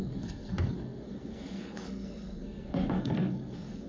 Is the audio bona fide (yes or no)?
no